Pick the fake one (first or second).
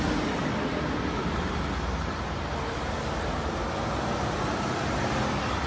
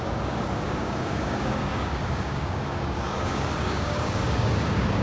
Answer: second